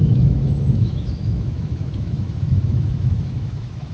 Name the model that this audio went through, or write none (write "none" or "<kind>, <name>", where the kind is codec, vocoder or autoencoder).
autoencoder, DAC-VAE